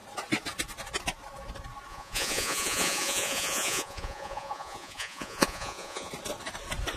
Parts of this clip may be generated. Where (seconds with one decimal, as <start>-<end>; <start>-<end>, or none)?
1.9-6.1